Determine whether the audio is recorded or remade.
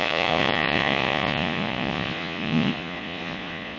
remade